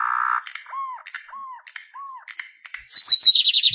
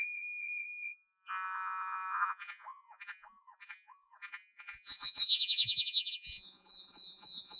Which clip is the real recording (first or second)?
first